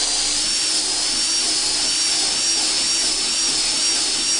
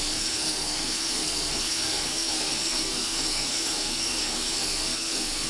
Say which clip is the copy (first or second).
second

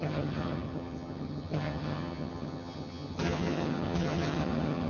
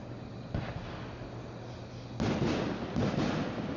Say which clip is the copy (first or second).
first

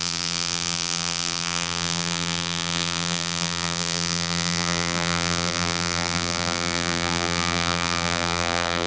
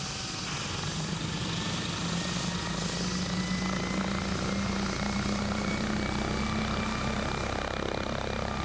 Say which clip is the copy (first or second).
first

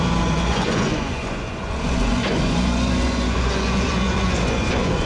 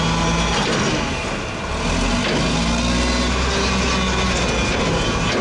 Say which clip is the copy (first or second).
first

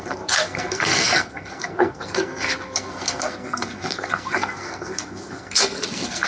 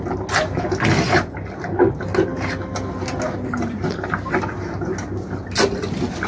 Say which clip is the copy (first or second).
first